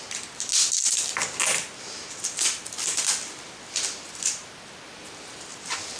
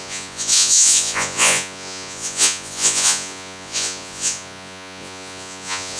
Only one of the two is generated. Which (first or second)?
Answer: second